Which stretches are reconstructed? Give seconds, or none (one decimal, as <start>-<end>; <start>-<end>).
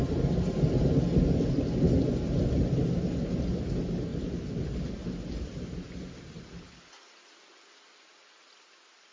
4.1-7.4